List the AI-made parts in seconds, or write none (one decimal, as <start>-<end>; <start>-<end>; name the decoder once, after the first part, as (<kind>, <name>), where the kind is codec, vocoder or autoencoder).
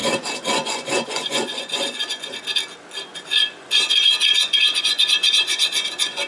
0.0-2.4 (vocoder, Vocos); 3.1-6.3